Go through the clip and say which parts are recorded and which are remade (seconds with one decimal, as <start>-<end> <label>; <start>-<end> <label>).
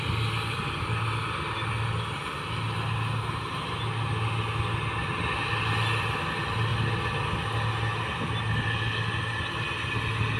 0.0-10.4 recorded